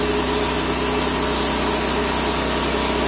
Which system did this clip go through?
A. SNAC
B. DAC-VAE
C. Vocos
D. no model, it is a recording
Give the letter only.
D